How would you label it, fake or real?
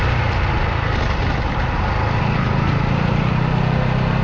real